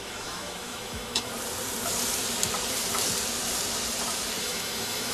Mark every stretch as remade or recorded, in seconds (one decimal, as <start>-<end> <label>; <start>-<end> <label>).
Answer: 0.0-1.3 remade; 1.3-4.4 recorded; 4.4-5.1 remade